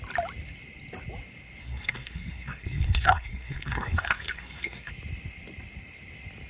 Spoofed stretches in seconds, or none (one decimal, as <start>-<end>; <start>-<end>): 1.6-4.9